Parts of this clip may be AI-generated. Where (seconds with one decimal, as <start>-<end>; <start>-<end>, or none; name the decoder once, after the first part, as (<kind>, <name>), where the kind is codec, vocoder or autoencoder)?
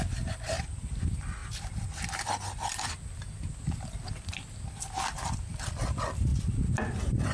none